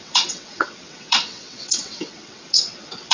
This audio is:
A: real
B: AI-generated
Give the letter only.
B